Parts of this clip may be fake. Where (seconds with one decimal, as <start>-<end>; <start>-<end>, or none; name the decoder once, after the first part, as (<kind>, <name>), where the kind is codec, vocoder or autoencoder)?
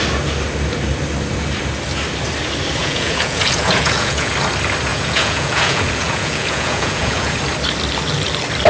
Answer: 2.8-4.3 (vocoder, Vocos); 4.9-7.3